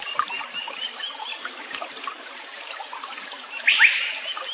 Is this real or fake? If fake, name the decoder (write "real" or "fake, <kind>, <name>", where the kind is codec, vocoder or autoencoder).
fake, vocoder, BigVGAN v2